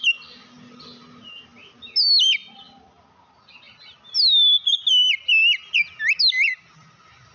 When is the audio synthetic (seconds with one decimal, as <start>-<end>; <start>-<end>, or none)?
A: none